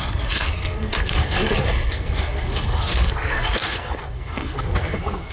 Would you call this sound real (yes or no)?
no